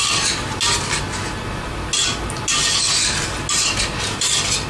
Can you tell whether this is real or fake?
real